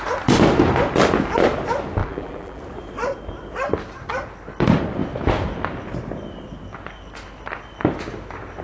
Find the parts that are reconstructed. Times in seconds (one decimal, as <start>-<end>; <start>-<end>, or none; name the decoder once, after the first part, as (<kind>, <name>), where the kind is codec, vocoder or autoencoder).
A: 2.0-2.6 (vocoder, BigVGAN v2)

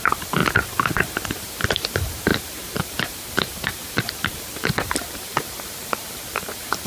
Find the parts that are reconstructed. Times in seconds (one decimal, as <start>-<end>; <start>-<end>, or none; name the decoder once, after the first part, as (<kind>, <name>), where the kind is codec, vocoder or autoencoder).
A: 0.0-0.4 (vocoder, BigVGAN v2); 1.0-5.3; 6.0-6.9